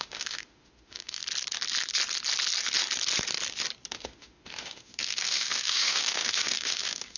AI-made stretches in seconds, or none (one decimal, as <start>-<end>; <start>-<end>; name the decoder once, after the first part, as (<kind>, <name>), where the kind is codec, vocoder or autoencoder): 0.0-1.2 (autoencoder, DAC-VAE); 3.9-7.2